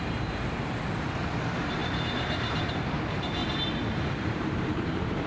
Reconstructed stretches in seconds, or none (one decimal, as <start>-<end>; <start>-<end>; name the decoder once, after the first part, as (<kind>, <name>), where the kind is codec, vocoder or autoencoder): 0.0-3.4 (vocoder, BigVGAN v2); 3.9-5.3

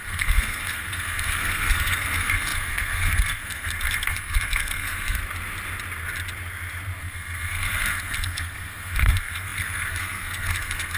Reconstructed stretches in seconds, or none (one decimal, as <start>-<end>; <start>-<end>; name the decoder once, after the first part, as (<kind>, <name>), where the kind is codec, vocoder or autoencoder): 0.0-5.2 (codec, SNAC); 7.0-11.0